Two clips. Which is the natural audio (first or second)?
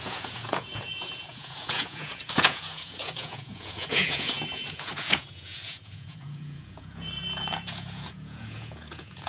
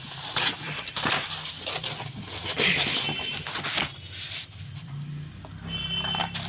second